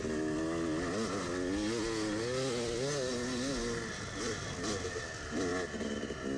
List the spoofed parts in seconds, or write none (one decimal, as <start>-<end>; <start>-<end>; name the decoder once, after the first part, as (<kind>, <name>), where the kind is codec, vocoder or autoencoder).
none

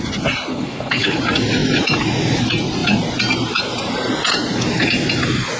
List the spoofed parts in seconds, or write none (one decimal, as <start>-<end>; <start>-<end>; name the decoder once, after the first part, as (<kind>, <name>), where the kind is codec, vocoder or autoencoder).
0.5-1.2 (codec, HILCodec)

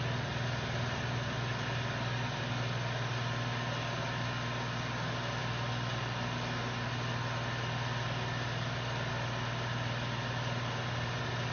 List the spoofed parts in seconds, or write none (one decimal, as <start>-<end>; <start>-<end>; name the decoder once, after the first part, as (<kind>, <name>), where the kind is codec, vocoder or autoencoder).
none

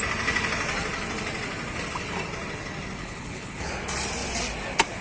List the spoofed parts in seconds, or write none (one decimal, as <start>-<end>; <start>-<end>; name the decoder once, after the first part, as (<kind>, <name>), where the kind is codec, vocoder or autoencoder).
3.0-3.7 (codec, HILCodec)